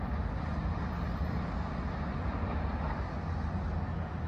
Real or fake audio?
real